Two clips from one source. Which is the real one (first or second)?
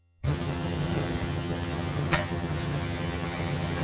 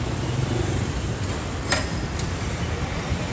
second